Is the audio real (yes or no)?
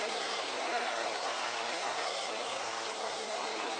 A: no